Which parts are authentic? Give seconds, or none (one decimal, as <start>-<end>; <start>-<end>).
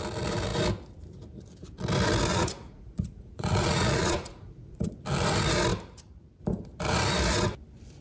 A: 0.0-2.3; 4.9-8.0